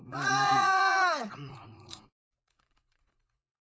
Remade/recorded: remade